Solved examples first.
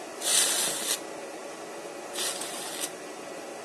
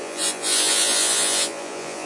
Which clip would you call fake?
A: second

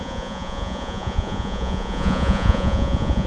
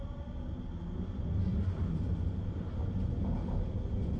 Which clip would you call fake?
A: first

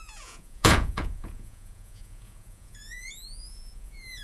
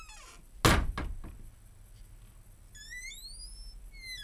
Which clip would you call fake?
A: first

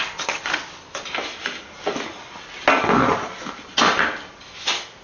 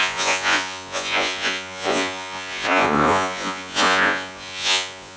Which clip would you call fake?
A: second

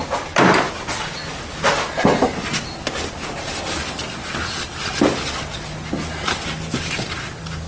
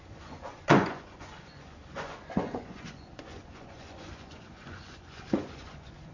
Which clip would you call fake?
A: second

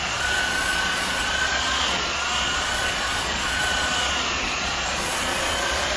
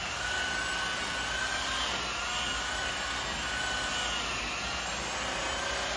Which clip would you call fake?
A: first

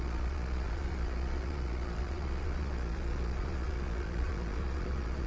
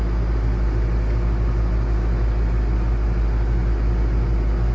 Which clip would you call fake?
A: first